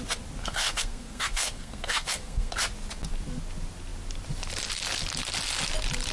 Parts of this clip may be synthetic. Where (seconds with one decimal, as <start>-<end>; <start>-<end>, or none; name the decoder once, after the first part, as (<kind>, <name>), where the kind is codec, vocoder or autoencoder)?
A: 0.4-2.6 (codec, SNAC)